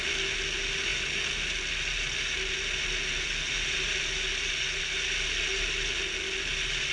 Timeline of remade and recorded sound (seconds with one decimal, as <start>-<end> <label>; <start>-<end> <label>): 0.0-6.9 recorded